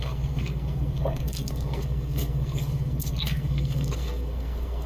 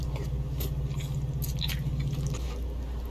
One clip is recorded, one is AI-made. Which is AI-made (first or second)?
first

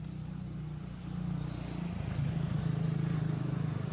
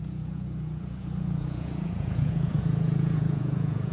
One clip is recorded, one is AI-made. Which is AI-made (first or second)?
second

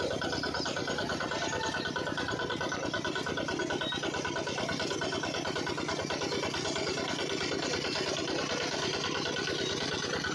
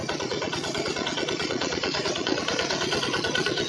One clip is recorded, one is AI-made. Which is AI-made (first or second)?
second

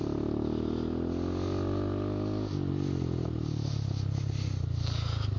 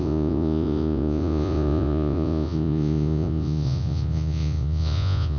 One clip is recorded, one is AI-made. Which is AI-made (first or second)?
second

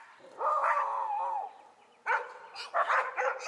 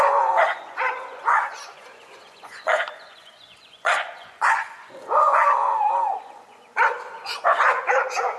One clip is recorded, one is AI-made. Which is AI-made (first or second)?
second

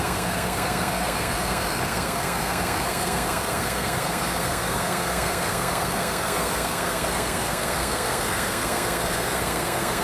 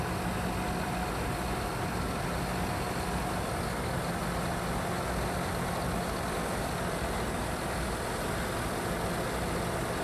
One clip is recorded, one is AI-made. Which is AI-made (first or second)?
first